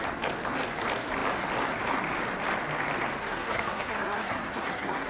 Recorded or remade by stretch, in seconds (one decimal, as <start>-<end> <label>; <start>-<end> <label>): 0.0-3.2 recorded; 3.2-5.1 remade